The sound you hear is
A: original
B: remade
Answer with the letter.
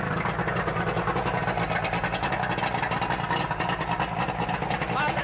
A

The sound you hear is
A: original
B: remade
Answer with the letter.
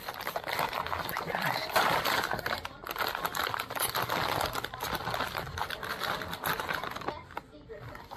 A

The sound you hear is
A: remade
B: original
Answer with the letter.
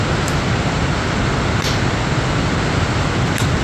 B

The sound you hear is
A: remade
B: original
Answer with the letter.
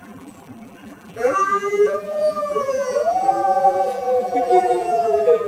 A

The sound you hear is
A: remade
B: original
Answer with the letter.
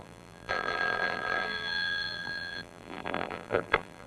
A